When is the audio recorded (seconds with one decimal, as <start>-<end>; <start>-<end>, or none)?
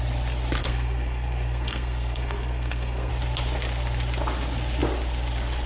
0.0-0.6; 3.1-5.7